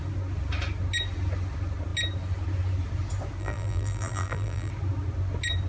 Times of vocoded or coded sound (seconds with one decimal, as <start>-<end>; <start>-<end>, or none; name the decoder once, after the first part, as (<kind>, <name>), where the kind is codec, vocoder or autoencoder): 3.4-4.7 (vocoder, BigVGAN v2)